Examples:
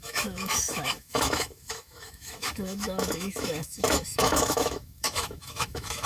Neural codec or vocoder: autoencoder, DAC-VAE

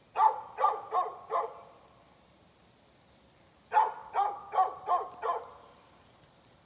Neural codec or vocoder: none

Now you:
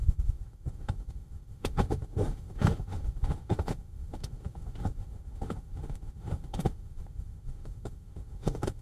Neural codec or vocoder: autoencoder, DAC-VAE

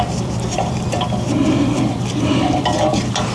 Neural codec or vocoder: vocoder, BigVGAN v2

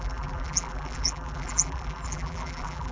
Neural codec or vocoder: vocoder, BigVGAN v2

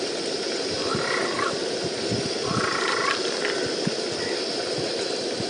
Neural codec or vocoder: none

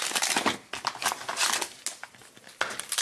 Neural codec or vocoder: none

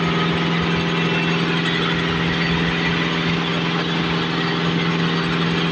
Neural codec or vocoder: none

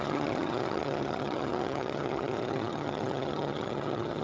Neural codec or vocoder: vocoder, HiFi-GAN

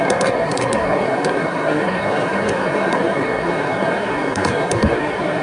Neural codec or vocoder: codec, SNAC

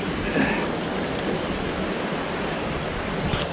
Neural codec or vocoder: none